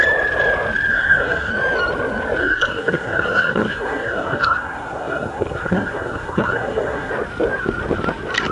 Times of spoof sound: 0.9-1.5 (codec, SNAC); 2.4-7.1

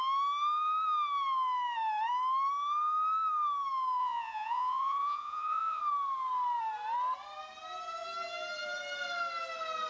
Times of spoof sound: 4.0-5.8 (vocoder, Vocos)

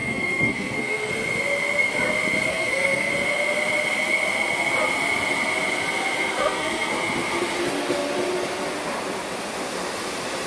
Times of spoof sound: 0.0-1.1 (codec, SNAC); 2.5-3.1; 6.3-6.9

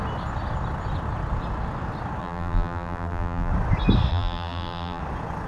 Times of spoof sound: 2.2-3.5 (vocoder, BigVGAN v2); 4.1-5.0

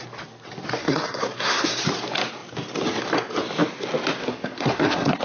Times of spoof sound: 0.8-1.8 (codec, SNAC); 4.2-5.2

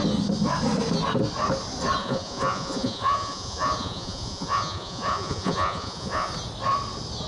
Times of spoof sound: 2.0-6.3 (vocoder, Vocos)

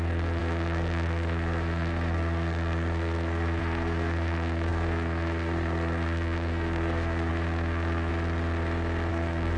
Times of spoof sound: 0.0-8.1 (codec, SNAC); 9.1-9.6